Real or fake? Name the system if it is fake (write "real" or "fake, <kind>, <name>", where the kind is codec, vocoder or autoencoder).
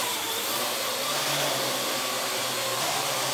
real